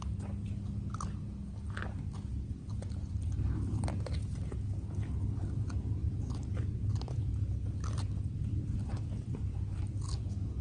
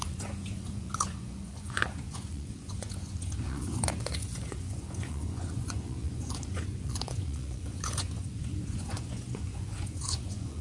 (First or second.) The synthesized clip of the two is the second